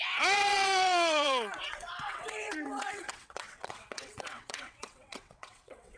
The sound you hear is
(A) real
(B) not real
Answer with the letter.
B